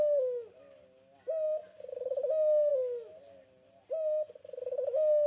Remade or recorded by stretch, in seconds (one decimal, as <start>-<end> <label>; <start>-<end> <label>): 0.0-5.3 recorded